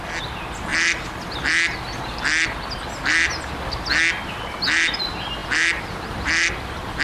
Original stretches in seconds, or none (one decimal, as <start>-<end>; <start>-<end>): 0.0-7.0